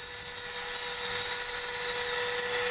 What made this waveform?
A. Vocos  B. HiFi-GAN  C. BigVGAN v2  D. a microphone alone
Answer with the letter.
D